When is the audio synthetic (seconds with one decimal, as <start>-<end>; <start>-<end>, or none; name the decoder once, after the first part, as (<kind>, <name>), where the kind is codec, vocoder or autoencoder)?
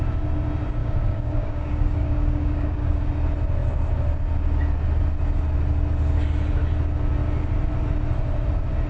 0.8-3.0 (codec, DAC)